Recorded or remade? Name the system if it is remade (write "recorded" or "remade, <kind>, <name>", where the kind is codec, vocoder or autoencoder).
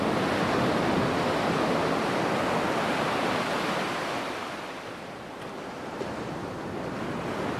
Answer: recorded